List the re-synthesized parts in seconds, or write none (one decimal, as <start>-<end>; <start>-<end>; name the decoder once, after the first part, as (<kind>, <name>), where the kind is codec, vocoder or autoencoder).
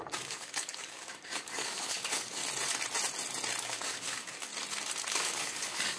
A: 0.0-2.4 (codec, DAC); 3.6-4.5; 5.1-6.0